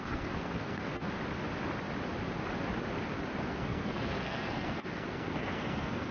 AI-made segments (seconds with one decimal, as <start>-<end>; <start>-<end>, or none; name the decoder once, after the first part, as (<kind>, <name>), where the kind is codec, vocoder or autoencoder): 0.0-0.9 (codec, SNAC); 3.4-6.1